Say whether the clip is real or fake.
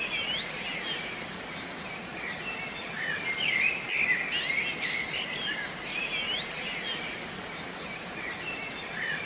real